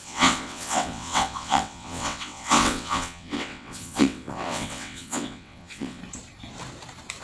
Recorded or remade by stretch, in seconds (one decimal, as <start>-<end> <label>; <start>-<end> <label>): 0.0-6.0 remade; 6.0-7.2 recorded